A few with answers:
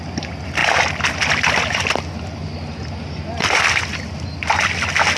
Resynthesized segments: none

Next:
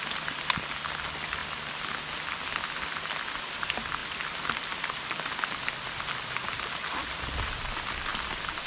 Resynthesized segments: 0.0-1.4 (vocoder, BigVGAN v2); 2.3-8.7

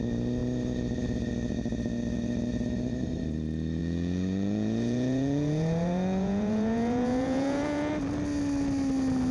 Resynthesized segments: 3.8-7.9 (vocoder, Vocos)